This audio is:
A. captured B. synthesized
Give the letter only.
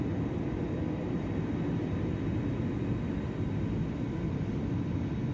A